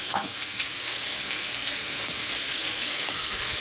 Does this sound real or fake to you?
fake